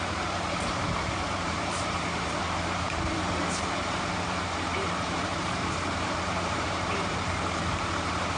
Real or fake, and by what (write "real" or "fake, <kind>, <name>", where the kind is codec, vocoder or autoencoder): fake, vocoder, BigVGAN v2